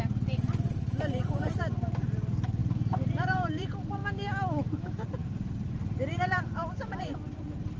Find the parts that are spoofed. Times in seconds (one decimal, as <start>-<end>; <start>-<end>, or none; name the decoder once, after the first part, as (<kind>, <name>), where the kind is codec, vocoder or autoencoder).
0.0-4.0 (vocoder, BigVGAN v2); 4.7-7.8